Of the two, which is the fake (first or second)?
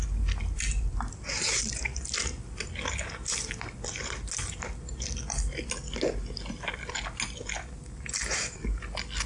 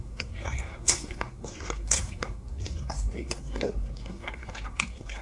second